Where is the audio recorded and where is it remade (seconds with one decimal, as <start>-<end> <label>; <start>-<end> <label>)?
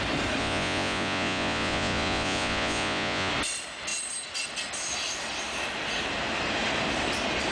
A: 0.0-0.4 recorded; 0.4-3.3 remade; 3.3-7.5 recorded